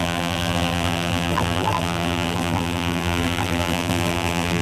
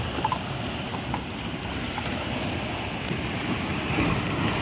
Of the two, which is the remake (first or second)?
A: first